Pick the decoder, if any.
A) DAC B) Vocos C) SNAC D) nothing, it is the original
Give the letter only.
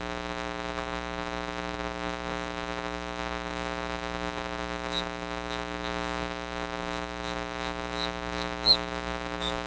A